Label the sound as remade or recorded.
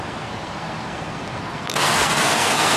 remade